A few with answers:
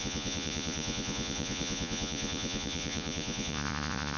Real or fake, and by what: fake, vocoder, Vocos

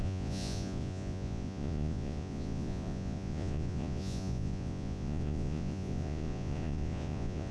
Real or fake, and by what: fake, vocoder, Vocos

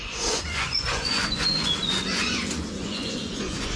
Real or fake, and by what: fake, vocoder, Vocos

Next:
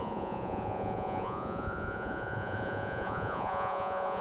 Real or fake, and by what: fake, vocoder, Vocos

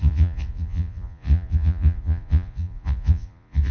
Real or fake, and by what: fake, vocoder, Vocos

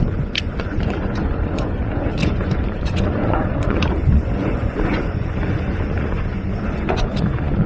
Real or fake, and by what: fake, vocoder, Vocos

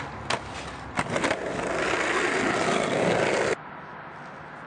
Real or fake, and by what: real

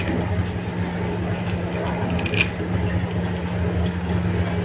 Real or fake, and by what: real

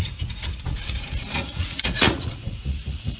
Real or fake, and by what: fake, vocoder, Vocos